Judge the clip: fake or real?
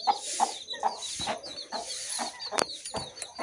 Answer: real